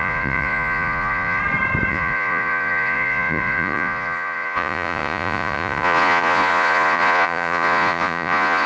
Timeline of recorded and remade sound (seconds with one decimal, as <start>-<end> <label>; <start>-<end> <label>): 0.0-1.4 remade; 1.4-1.9 recorded; 1.9-8.7 remade